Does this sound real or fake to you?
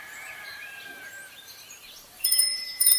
fake